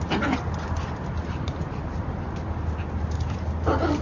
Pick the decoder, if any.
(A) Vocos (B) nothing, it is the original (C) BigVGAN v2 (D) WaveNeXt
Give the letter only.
B